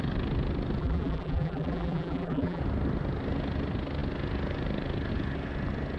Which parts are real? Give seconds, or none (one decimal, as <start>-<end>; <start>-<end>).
0.0-0.8; 2.6-6.0